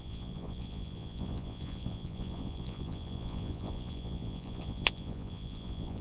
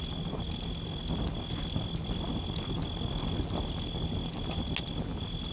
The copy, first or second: first